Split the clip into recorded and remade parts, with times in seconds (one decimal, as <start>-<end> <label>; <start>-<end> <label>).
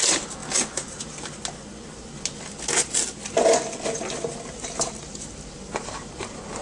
0.0-0.4 remade; 0.4-4.4 recorded; 4.4-6.6 remade